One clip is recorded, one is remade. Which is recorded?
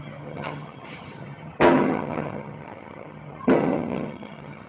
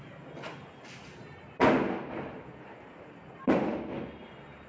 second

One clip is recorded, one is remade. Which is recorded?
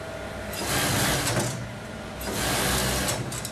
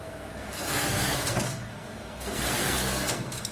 first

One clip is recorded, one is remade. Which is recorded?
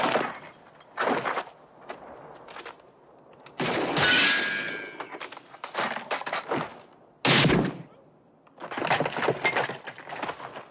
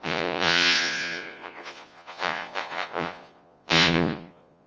first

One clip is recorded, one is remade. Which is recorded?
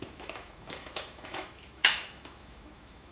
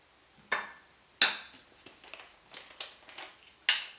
second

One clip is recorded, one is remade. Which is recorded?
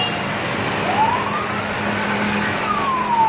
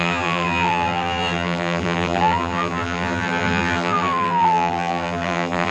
first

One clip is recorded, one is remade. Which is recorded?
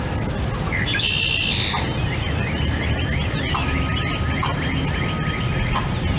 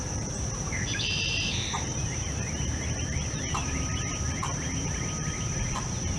first